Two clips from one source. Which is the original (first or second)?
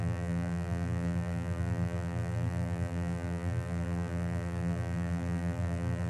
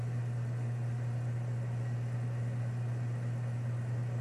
second